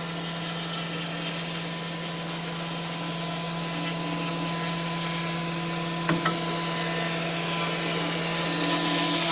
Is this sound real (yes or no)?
yes